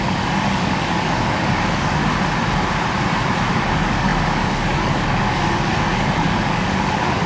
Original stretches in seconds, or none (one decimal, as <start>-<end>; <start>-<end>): 2.0-3.5